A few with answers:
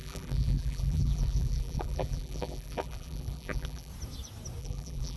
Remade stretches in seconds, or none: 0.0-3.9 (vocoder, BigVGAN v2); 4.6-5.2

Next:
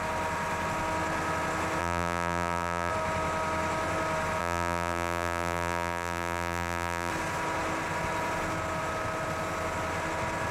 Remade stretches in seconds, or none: 1.8-2.9 (vocoder, BigVGAN v2); 4.4-7.1